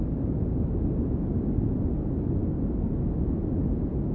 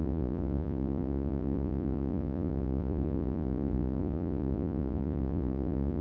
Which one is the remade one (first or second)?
second